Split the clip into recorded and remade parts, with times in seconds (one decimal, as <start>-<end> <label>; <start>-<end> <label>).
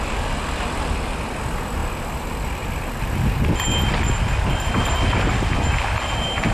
0.0-6.5 recorded